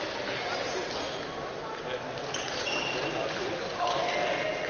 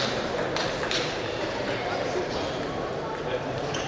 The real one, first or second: first